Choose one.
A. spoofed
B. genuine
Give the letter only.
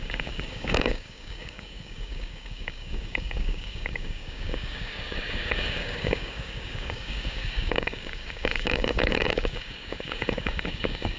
A